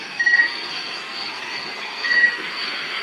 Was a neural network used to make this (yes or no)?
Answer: yes